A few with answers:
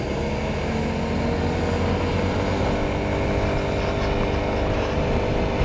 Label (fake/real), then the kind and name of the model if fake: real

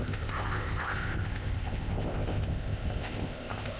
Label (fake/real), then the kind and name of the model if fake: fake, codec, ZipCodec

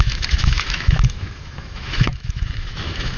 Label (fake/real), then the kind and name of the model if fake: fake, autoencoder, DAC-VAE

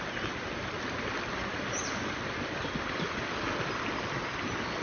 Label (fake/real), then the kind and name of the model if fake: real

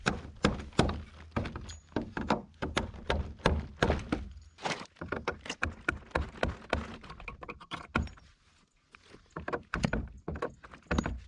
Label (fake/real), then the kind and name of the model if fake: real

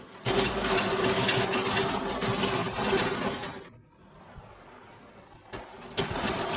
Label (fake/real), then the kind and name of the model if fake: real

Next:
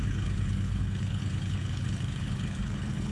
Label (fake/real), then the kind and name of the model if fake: fake, codec, HILCodec